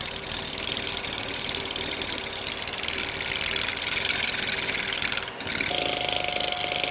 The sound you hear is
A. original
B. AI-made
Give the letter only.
A